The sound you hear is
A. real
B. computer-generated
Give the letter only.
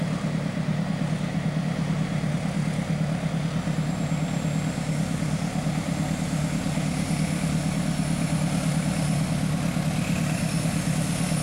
A